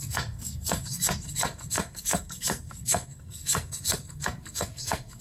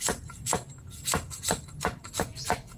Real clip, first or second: second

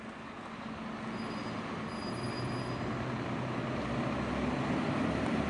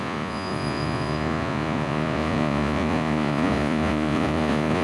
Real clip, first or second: first